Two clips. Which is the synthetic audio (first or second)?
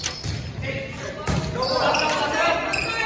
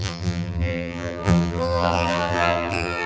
second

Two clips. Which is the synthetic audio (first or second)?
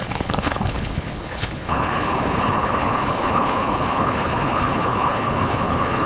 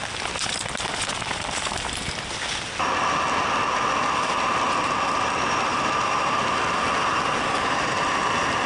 first